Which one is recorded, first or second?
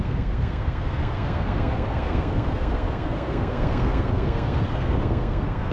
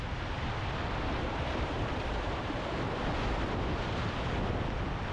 second